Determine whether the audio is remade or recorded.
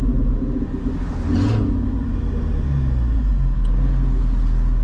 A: recorded